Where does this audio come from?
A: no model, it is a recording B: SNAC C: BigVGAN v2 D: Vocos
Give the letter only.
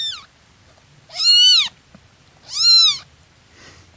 A